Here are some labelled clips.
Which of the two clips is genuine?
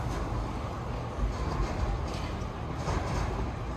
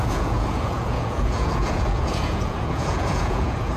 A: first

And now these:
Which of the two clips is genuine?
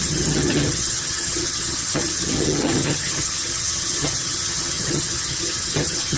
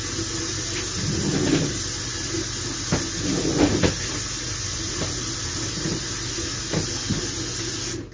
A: second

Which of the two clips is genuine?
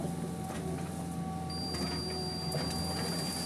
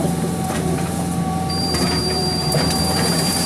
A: first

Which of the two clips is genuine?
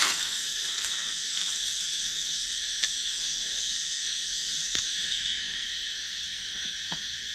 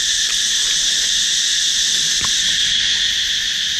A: second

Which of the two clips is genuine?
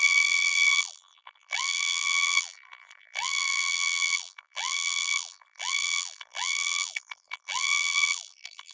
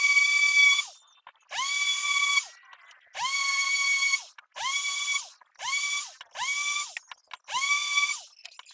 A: second